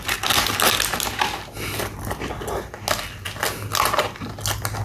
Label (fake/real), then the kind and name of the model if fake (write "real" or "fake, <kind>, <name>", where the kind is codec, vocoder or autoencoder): real